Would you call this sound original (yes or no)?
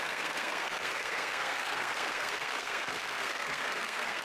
no